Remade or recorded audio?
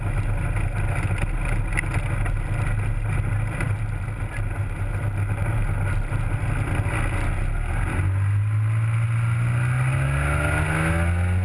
recorded